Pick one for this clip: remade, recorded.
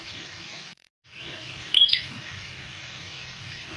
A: remade